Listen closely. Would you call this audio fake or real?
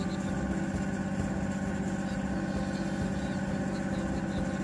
real